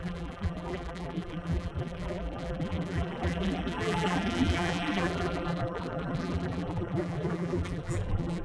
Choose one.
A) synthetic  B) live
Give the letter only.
A